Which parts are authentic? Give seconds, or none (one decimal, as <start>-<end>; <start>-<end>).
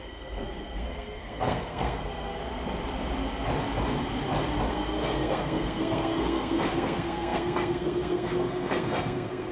2.4-4.7